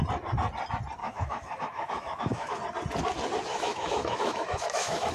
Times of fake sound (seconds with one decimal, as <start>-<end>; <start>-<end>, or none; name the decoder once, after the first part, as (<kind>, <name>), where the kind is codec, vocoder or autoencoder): 1.0-2.6 (autoencoder, DAC-VAE); 3.5-5.1